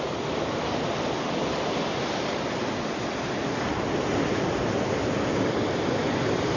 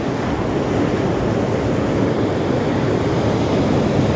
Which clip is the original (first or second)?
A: second